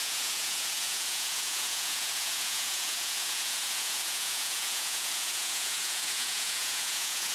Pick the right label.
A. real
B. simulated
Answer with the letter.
B